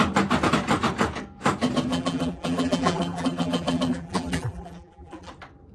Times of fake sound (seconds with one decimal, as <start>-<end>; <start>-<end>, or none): 1.9-5.3